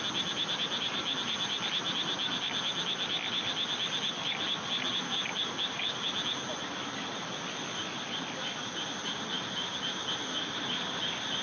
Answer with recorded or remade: recorded